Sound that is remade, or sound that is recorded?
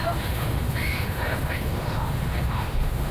remade